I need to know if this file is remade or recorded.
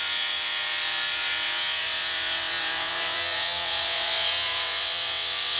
remade